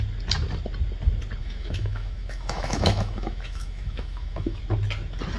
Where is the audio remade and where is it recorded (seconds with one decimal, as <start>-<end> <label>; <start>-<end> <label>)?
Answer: 0.0-1.4 recorded; 1.4-4.6 remade; 4.6-5.4 recorded